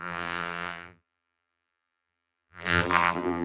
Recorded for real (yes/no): no